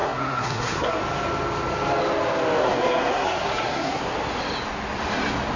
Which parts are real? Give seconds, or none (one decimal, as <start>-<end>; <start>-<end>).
1.0-2.6; 4.0-5.6